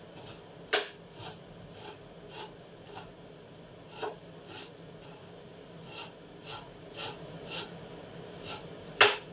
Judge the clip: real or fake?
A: real